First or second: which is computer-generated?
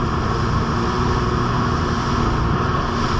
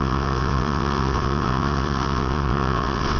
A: second